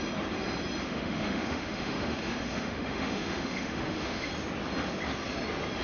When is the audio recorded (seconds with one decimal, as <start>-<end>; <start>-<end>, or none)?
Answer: 0.0-0.8; 4.3-5.8